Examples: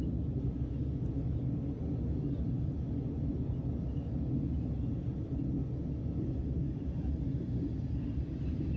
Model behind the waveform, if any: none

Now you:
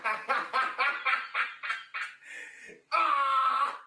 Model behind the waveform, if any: none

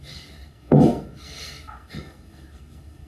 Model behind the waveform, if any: codec, SNAC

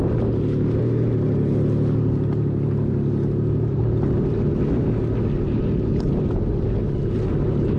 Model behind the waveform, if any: none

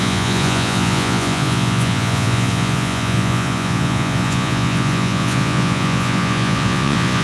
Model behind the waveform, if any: vocoder, Vocos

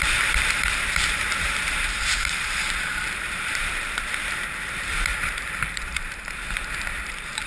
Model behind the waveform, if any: vocoder, BigVGAN v2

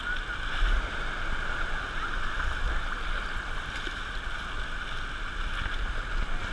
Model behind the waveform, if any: none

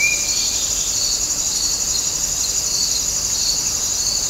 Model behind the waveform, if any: none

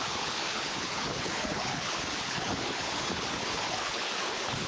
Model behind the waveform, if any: codec, HILCodec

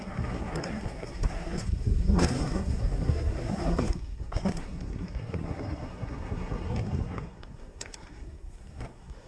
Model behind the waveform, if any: codec, SNAC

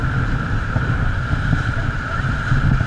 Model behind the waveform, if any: vocoder, BigVGAN v2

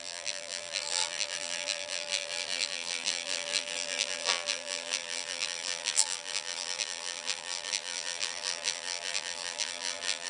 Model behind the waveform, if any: vocoder, BigVGAN v2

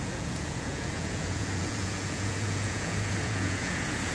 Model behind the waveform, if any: vocoder, Vocos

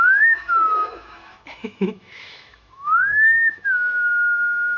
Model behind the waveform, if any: autoencoder, DAC-VAE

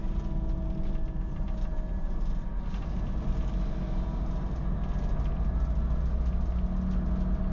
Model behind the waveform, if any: none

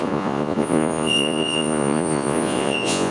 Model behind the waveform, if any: vocoder, Vocos